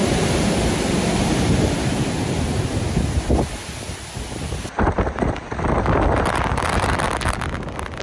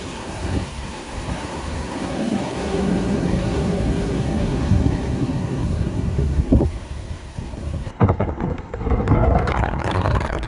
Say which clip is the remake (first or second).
second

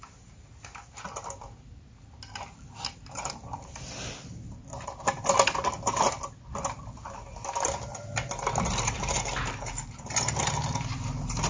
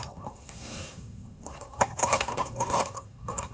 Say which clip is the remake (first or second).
second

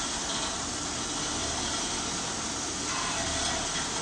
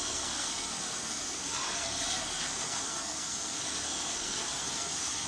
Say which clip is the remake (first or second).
second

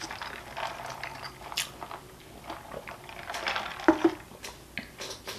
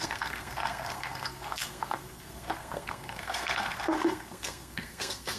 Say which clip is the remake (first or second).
second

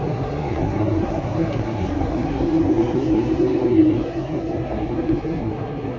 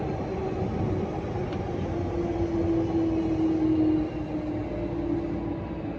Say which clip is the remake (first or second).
first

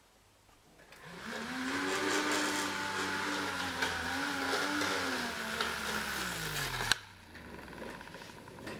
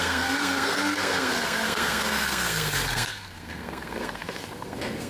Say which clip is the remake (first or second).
second